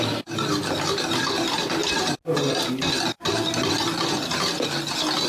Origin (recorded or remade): recorded